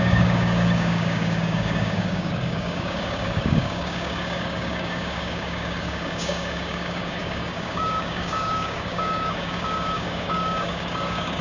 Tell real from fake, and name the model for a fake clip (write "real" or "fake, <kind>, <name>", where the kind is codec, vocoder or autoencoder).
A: fake, codec, DAC